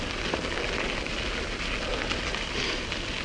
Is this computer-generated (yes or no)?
no